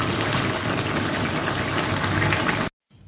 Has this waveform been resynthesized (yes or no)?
no